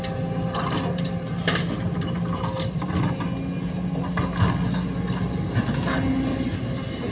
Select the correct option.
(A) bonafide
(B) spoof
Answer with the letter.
A